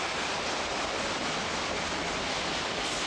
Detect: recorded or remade recorded